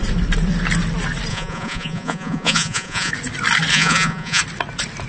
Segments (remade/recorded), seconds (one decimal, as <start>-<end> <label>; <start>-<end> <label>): 0.0-1.3 recorded; 1.3-3.1 remade; 3.1-3.7 recorded; 3.7-4.4 remade; 4.4-5.1 recorded